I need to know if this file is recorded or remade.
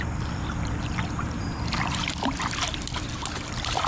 remade